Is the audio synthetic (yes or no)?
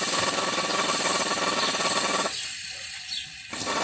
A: yes